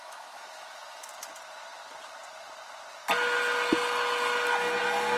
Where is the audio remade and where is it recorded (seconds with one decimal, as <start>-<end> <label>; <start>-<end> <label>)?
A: 0.0-1.1 remade; 1.1-5.2 recorded